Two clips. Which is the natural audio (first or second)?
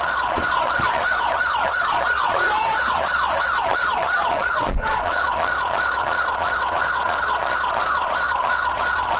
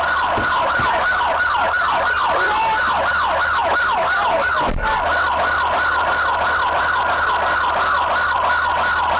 second